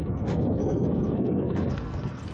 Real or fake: fake